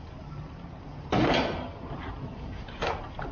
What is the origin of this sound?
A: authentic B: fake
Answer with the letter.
A